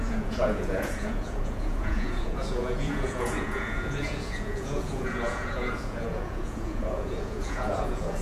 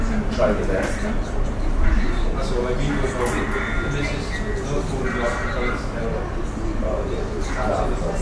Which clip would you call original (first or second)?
second